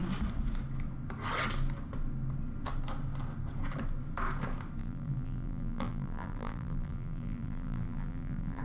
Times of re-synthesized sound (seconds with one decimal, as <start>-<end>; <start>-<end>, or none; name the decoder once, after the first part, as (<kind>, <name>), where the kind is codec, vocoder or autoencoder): 4.8-8.6 (vocoder, BigVGAN v2)